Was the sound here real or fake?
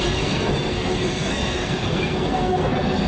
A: fake